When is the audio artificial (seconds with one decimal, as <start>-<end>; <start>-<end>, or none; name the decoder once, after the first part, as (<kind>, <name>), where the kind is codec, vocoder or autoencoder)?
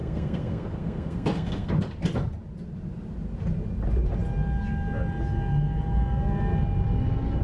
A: 0.0-1.7 (codec, SNAC)